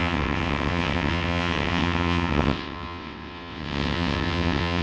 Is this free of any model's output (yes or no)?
no